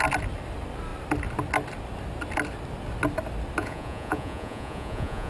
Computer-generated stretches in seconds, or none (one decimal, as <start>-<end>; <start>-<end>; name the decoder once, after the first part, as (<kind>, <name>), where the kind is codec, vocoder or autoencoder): 3.6-5.3 (vocoder, Vocos)